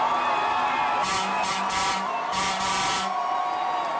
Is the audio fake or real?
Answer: real